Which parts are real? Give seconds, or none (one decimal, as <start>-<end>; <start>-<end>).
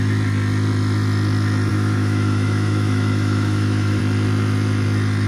0.0-1.7; 4.0-5.3